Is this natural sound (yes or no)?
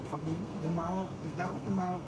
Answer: no